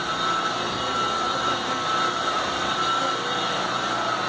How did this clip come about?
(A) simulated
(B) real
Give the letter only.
A